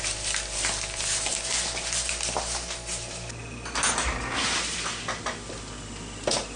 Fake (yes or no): no